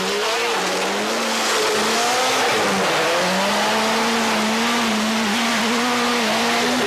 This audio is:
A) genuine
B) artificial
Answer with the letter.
A